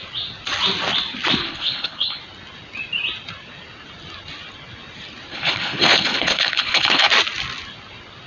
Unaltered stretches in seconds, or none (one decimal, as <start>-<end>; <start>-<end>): 0.0-1.4; 2.2-5.3; 7.1-8.3